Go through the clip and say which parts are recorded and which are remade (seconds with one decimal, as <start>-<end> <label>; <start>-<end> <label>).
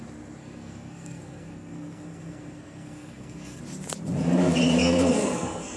0.0-0.4 recorded; 0.4-3.6 remade; 3.6-4.8 recorded; 4.8-5.8 remade